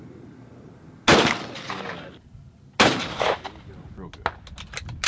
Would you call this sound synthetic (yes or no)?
no